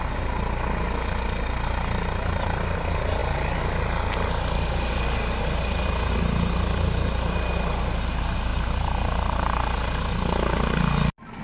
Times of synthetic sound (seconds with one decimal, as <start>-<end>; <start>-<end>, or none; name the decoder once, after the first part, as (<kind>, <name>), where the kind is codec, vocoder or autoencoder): none